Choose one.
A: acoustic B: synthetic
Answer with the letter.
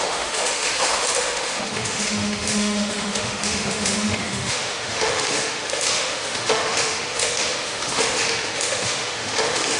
B